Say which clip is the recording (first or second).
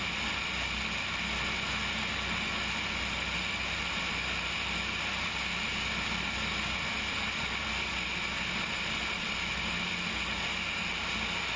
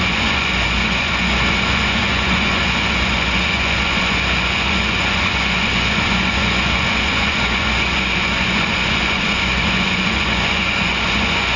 first